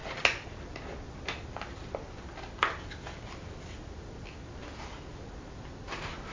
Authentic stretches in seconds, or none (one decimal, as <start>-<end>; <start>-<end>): 0.0-6.3

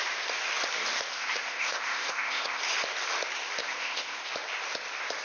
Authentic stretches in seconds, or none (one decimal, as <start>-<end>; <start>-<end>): 0.0-1.1; 2.6-3.6; 4.2-5.2

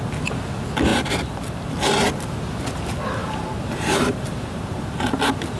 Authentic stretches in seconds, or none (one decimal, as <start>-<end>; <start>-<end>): 0.0-3.2; 4.8-5.6

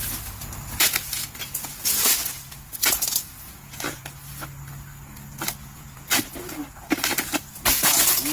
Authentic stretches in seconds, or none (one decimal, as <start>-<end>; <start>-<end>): 0.0-0.8; 4.0-5.6; 6.6-7.5

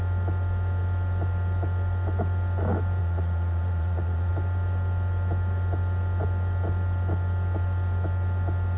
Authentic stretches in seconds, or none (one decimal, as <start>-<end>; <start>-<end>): 0.0-3.0; 4.3-8.8

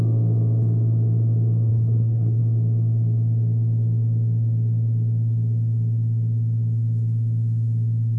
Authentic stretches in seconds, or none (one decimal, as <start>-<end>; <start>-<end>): 0.0-1.7; 2.4-8.2